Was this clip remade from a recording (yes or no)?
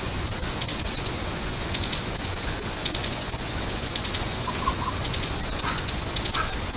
yes